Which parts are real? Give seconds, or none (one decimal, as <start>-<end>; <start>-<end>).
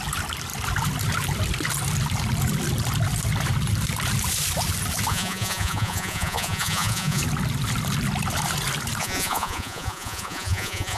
0.0-5.1; 7.2-9.0